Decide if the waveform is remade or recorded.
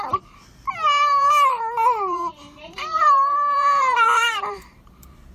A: remade